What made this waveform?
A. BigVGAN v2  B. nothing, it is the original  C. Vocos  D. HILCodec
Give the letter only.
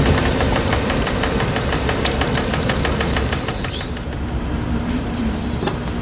A